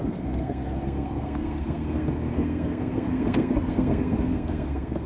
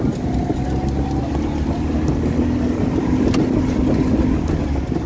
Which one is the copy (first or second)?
first